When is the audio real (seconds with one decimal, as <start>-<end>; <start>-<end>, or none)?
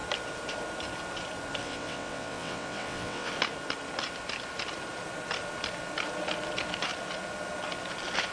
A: 0.0-1.6; 3.3-8.3